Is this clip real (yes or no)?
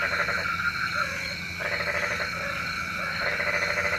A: yes